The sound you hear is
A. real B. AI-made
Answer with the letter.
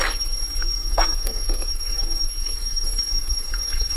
B